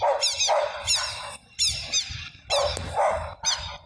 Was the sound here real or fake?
real